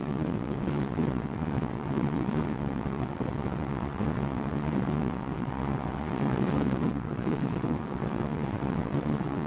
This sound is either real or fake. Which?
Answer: fake